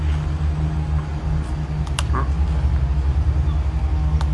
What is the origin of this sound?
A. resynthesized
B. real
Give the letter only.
B